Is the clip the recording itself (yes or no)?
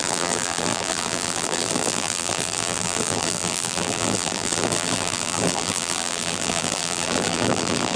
no